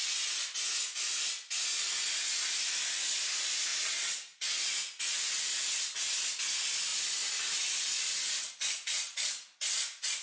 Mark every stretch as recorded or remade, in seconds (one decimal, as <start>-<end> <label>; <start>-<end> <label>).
0.0-10.2 recorded